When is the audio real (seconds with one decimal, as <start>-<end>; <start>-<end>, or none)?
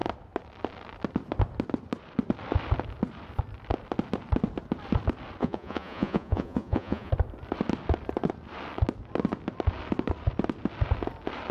0.0-5.4; 7.1-11.5